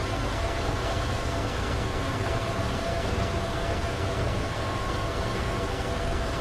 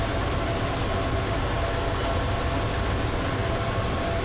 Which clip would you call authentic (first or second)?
second